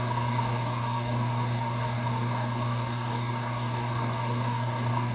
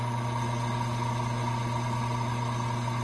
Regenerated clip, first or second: first